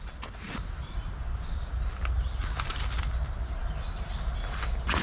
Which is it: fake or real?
real